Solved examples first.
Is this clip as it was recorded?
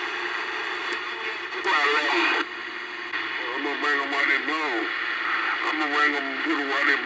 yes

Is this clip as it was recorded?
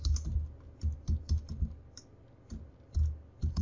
yes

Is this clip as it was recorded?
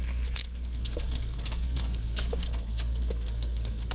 no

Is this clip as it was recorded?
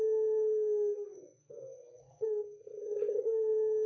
no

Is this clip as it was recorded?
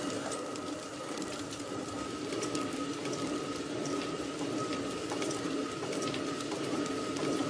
yes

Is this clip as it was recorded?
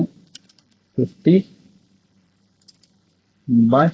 no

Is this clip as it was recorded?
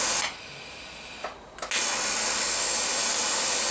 yes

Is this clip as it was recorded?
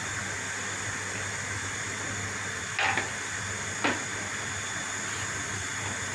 yes